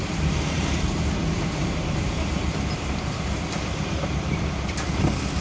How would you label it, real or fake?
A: fake